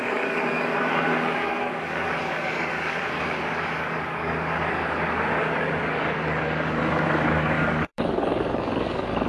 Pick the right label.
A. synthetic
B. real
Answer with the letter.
A